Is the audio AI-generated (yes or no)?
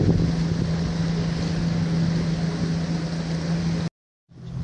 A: no